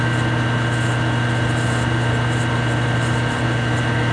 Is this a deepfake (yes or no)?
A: no